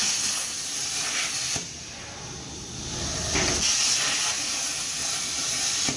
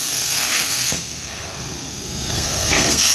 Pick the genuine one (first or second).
first